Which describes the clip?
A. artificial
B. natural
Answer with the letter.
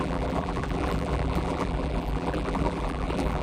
A